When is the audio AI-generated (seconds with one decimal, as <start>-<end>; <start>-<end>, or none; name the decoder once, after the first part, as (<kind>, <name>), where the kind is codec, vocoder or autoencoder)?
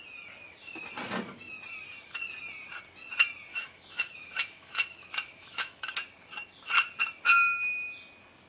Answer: 3.5-5.9 (autoencoder, DAC-VAE)